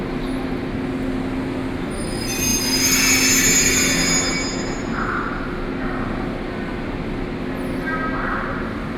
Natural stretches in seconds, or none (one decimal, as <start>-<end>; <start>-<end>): 0.0-9.0